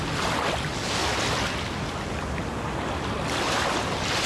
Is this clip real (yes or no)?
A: yes